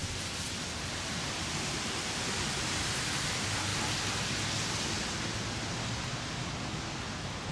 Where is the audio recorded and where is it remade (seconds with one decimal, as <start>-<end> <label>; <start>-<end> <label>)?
0.0-3.3 remade; 3.3-7.5 recorded